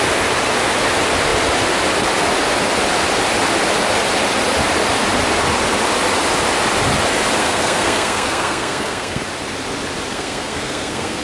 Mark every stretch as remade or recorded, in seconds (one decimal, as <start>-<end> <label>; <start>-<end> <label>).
0.0-7.4 recorded; 7.4-9.2 remade; 9.2-10.1 recorded; 10.1-11.2 remade